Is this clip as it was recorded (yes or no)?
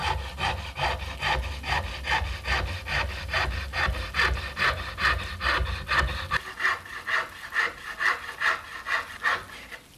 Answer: yes